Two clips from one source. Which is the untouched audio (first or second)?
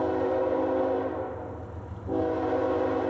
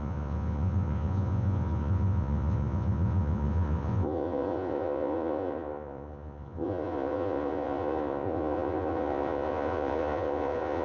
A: first